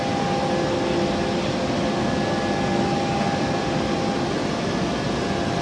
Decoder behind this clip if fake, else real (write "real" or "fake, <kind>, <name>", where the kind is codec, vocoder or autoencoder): real